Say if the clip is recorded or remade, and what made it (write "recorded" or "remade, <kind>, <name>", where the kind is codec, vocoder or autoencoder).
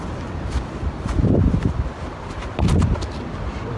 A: recorded